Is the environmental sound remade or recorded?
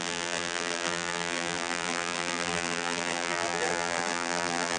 remade